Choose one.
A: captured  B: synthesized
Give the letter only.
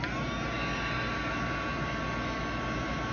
A